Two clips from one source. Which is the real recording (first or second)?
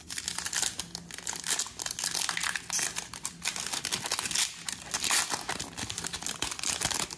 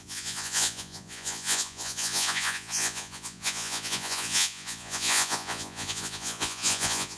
first